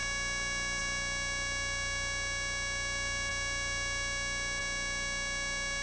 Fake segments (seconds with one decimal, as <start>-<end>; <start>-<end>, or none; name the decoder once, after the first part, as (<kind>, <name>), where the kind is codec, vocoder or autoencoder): none